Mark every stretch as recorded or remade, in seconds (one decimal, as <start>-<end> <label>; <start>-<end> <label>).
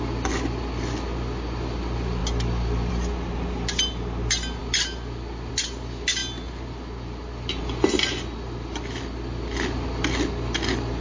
0.0-11.0 recorded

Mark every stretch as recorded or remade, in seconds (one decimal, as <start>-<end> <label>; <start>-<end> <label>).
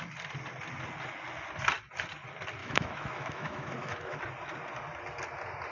0.0-2.6 recorded; 2.6-4.2 remade; 4.2-5.7 recorded